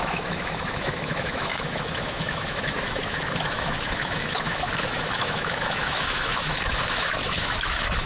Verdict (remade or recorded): remade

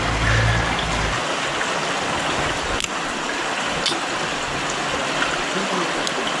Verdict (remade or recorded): recorded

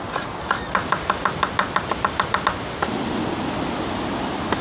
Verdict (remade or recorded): recorded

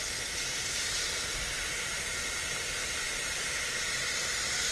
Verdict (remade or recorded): recorded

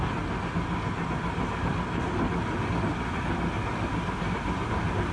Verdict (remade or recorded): recorded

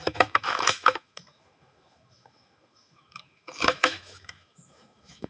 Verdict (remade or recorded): remade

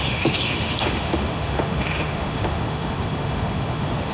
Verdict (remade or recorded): remade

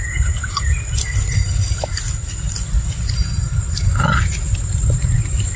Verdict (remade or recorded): recorded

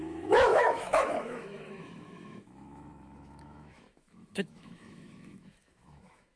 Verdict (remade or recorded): remade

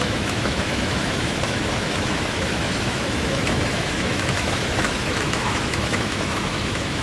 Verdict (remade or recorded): remade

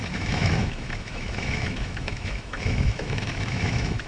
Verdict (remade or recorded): remade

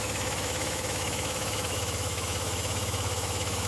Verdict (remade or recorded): remade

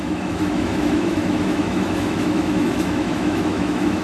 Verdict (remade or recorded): remade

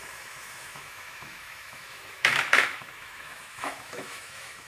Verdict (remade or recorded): remade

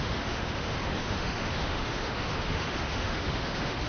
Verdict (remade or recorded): remade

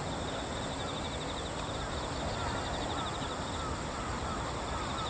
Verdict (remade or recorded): recorded